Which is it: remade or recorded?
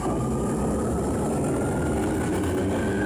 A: recorded